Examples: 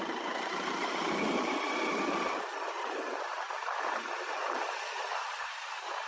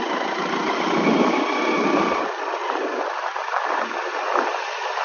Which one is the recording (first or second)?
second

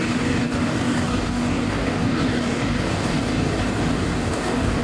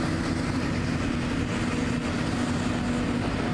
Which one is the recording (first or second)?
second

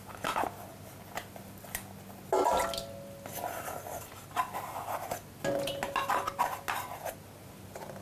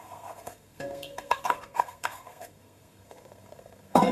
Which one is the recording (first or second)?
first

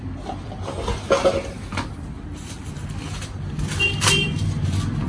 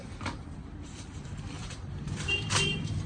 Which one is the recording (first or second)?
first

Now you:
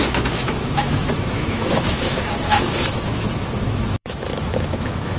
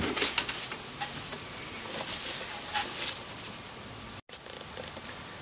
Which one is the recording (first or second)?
second